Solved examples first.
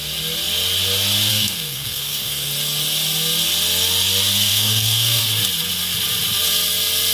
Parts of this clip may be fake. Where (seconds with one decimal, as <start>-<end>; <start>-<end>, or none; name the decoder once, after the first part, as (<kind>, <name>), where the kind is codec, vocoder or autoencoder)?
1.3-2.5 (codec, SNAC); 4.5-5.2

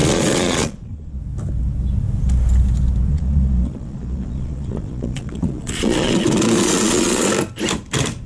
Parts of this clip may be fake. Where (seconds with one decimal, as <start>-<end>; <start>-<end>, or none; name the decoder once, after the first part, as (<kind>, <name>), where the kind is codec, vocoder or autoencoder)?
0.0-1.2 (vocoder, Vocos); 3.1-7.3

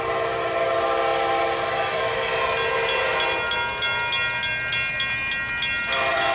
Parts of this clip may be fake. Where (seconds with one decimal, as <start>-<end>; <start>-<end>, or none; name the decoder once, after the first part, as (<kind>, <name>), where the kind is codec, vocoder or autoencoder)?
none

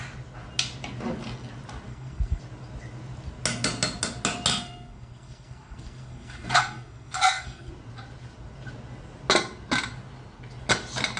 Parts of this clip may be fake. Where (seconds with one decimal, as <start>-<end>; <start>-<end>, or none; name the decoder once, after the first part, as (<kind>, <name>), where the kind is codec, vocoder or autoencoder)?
1.9-2.4 (codec, SNAC); 4.5-7.7

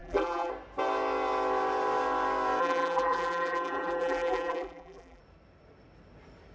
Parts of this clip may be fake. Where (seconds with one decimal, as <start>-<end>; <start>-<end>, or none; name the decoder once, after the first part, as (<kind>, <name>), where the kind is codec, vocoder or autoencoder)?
0.0-0.5 (vocoder, BigVGAN v2); 2.6-5.2